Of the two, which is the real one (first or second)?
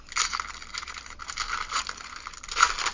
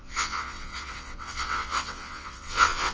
first